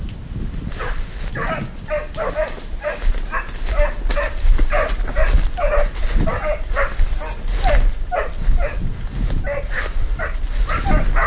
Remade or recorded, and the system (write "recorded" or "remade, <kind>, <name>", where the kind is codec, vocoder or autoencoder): recorded